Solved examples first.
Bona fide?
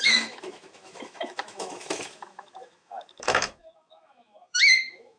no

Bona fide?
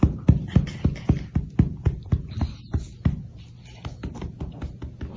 yes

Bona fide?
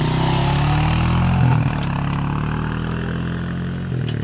yes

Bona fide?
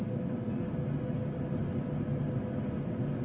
yes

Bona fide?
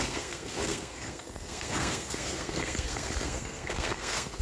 no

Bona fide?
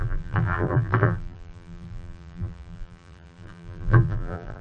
no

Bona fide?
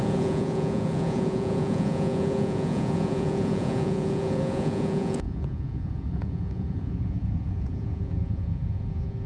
no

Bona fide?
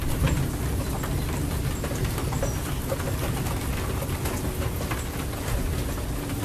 yes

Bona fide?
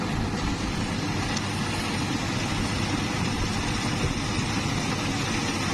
yes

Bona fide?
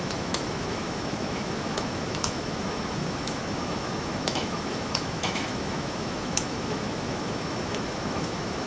no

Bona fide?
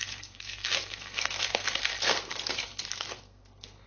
no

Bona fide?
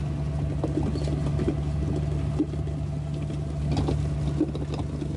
yes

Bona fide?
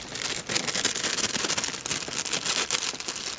yes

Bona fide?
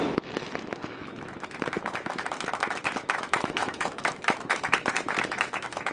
no